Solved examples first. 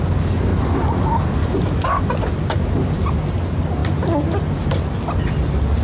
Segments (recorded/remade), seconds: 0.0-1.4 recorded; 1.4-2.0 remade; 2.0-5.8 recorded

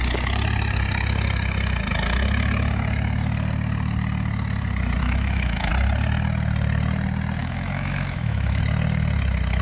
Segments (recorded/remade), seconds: 0.0-5.0 recorded; 5.0-5.7 remade; 5.7-7.4 recorded; 7.4-8.6 remade; 8.6-9.6 recorded

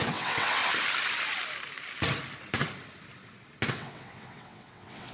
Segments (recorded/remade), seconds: 0.0-0.6 remade; 0.6-3.7 recorded; 3.7-5.1 remade